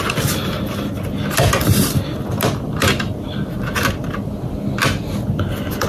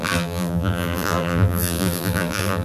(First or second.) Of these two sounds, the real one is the first